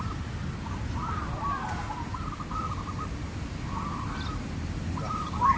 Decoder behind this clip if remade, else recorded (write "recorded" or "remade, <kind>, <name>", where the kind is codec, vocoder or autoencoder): remade, vocoder, BigVGAN v2